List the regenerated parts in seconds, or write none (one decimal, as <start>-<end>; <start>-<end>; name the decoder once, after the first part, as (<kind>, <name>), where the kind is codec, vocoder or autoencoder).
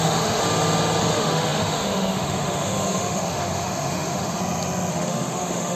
0.0-0.4 (autoencoder, DAC-VAE); 1.0-4.4; 4.9-5.8